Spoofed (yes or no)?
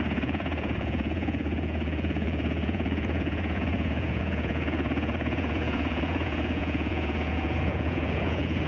yes